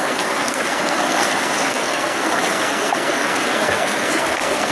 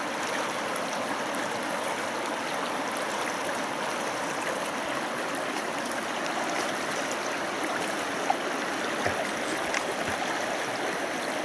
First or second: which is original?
second